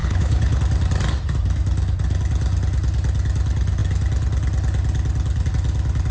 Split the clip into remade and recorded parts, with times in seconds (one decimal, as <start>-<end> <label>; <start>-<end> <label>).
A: 0.0-0.6 remade; 0.6-6.1 recorded